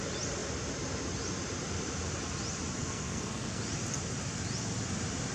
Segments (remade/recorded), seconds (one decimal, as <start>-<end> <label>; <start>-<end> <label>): 0.0-2.8 recorded; 2.8-3.6 remade; 3.6-5.3 recorded